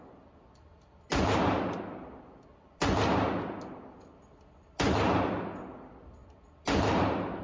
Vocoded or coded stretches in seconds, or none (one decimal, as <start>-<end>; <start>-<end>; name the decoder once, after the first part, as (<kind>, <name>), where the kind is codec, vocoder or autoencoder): none